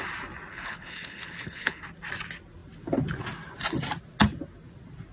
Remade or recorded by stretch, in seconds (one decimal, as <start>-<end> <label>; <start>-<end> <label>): 0.0-0.5 recorded; 0.5-1.8 remade; 1.8-5.1 recorded